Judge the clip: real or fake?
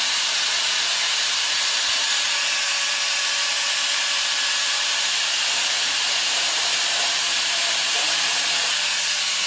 fake